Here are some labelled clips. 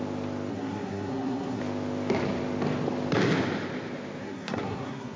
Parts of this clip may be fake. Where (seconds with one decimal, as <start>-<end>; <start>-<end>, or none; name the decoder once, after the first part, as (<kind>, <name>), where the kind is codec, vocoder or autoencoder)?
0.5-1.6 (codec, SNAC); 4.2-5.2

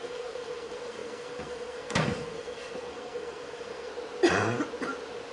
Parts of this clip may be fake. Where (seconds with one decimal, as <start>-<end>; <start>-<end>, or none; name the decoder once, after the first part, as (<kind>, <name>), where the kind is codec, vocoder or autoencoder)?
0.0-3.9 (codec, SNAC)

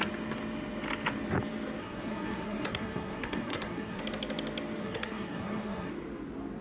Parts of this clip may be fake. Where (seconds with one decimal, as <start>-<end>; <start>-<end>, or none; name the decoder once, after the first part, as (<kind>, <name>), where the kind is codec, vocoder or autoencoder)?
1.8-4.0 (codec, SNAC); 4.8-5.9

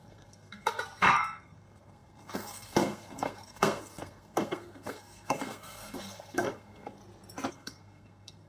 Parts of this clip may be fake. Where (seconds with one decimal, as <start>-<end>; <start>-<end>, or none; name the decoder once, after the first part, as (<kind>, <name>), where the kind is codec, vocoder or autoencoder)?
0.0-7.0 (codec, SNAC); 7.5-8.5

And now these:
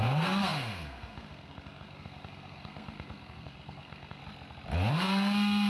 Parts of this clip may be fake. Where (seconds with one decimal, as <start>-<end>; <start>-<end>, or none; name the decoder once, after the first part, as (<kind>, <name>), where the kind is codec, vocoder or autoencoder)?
0.0-4.2 (codec, SNAC); 4.9-5.7